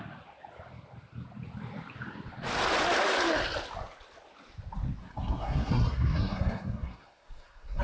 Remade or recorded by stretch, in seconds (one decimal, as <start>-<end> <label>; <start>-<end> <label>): 0.0-5.0 recorded; 5.0-7.8 remade